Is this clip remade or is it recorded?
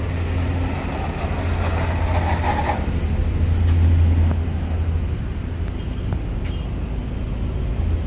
recorded